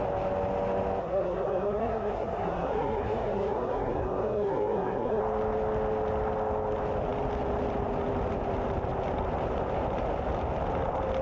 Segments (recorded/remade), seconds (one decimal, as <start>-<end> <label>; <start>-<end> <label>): 0.0-1.0 recorded; 1.0-5.2 remade; 5.2-11.2 recorded

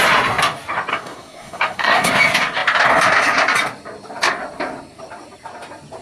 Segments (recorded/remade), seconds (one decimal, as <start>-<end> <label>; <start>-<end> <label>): 0.0-0.9 recorded; 0.9-2.1 remade; 2.1-6.0 recorded

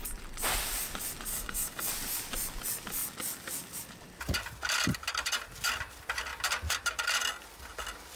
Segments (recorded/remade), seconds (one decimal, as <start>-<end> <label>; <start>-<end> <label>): 0.0-1.3 recorded; 1.3-1.9 remade; 1.9-8.2 recorded

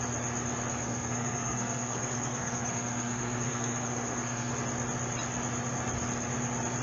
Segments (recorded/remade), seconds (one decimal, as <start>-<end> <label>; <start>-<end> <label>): 0.0-0.8 recorded; 0.8-4.5 remade; 4.5-6.8 recorded

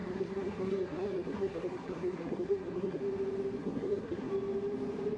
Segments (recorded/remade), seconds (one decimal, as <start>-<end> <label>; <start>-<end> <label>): 0.0-3.0 remade; 3.0-3.6 recorded; 3.6-4.3 remade; 4.3-5.2 recorded

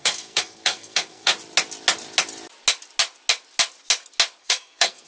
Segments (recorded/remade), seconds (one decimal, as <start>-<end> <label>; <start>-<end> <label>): 0.0-1.3 remade; 1.3-4.4 recorded; 4.4-5.1 remade